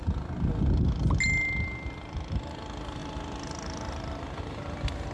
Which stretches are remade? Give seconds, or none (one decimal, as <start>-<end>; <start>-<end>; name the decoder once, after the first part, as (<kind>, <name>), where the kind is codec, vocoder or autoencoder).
none